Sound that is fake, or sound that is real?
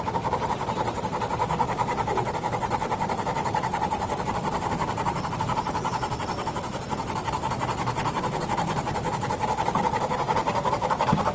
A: fake